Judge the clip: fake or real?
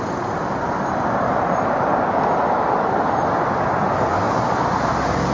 real